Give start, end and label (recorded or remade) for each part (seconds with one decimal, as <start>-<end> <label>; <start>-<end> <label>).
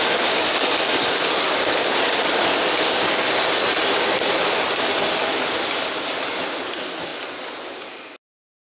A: 0.0-8.6 recorded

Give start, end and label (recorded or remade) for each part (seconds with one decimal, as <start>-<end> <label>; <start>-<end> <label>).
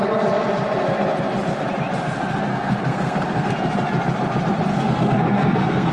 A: 0.0-2.5 recorded; 2.5-3.5 remade; 3.5-4.7 recorded; 4.7-5.9 remade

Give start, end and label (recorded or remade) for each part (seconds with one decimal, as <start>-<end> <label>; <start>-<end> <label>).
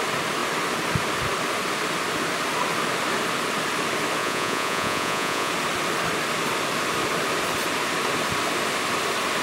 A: 0.0-4.2 recorded; 4.2-5.5 remade; 5.5-9.4 recorded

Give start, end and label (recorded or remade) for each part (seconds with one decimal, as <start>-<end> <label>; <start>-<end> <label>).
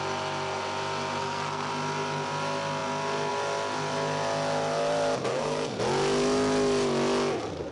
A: 0.0-1.2 recorded; 1.2-1.7 remade; 1.7-5.3 recorded; 5.3-5.8 remade; 5.8-7.7 recorded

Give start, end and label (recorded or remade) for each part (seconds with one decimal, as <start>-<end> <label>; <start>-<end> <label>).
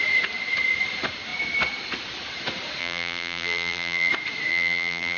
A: 0.0-2.8 recorded; 2.8-4.1 remade; 4.1-4.5 recorded; 4.5-5.2 remade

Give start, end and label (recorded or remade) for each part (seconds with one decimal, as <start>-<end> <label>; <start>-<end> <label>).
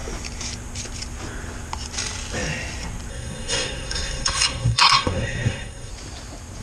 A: 0.0-3.1 recorded; 3.1-5.9 remade; 5.9-6.6 recorded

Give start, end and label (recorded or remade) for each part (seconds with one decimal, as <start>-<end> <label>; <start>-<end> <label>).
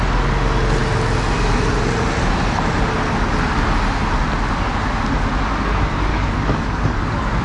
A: 0.0-6.1 recorded; 6.1-7.0 remade; 7.0-7.4 recorded